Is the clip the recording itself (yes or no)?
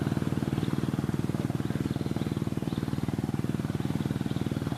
no